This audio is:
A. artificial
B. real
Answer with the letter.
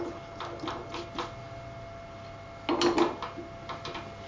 B